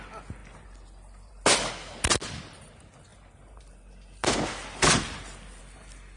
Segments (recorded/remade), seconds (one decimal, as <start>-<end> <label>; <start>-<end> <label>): 0.0-6.2 recorded